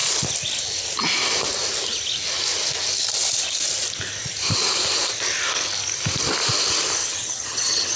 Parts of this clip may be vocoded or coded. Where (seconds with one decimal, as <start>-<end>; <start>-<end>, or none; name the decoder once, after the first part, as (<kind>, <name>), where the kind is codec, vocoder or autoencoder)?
7.0-8.0 (vocoder, HiFi-GAN)